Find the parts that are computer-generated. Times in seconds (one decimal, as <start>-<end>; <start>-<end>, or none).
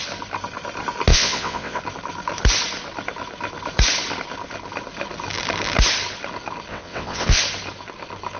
1.1-1.8; 6.7-7.4